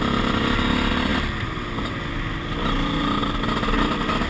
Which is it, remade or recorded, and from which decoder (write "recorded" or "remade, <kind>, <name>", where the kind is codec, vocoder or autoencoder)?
recorded